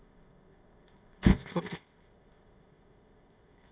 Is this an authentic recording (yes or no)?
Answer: no